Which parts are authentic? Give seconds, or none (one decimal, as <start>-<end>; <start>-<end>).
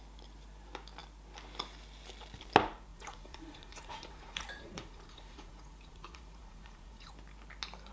0.0-2.9; 7.1-7.9